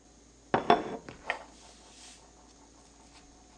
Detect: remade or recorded recorded